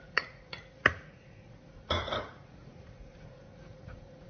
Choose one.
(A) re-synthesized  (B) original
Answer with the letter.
A